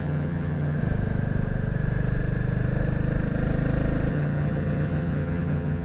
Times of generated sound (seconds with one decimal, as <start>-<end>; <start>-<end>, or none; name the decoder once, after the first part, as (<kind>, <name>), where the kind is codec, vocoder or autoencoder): 0.0-0.8 (vocoder, HiFi-GAN); 4.1-5.8